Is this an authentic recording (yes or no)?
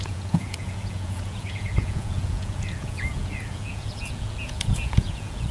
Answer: no